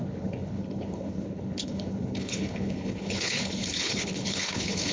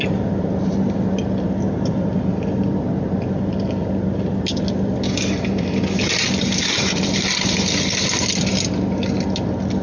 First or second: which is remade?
first